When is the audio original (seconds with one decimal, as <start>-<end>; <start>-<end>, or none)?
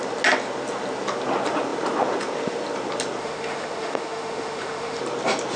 0.0-3.2; 5.0-5.6